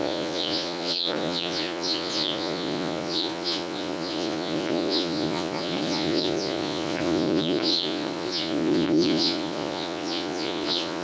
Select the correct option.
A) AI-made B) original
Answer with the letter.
A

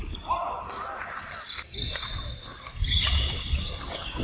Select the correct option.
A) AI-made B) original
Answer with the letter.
B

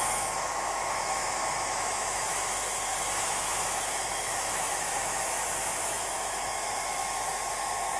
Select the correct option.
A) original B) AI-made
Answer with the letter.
B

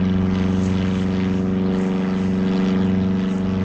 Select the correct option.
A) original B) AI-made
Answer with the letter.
A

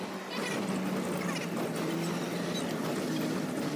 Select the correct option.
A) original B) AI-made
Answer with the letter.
A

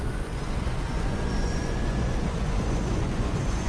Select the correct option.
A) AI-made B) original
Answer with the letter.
A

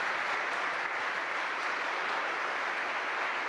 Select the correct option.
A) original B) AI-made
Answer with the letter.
A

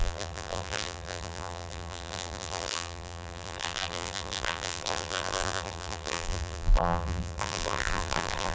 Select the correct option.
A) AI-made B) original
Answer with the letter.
A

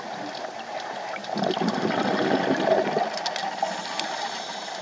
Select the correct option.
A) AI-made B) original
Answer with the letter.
B